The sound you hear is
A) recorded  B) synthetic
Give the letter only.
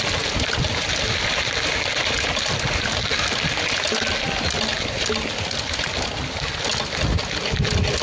A